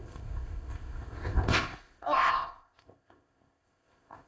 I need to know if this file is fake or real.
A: fake